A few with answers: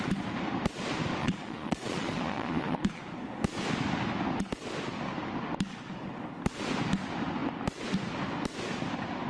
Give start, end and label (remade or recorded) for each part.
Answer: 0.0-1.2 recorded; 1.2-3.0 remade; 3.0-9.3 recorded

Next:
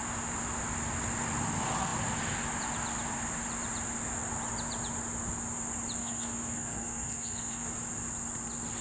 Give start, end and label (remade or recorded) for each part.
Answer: 0.0-6.0 recorded; 6.0-7.7 remade; 7.7-8.8 recorded

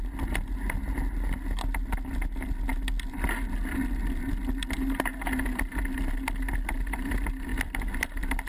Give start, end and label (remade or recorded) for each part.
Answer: 0.0-8.5 recorded

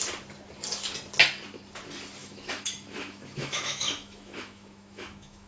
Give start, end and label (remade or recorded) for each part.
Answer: 0.0-2.2 recorded; 2.2-5.5 remade

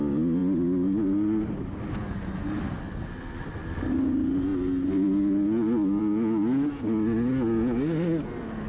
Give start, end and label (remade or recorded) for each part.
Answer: 0.0-8.7 recorded